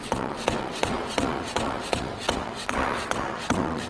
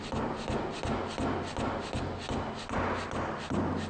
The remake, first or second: first